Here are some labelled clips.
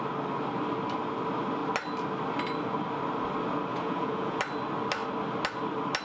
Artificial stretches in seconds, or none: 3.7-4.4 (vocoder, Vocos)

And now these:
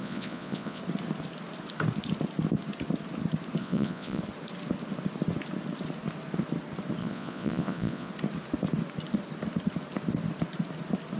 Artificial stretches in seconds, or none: 0.0-0.8 (vocoder, Vocos); 3.6-4.2; 7.0-8.1

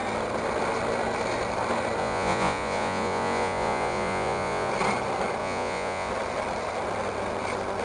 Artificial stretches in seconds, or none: 2.0-4.7 (vocoder, Vocos); 5.4-6.1

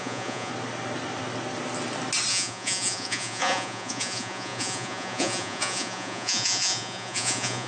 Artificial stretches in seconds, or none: 0.0-0.5 (vocoder, Vocos); 2.3-7.7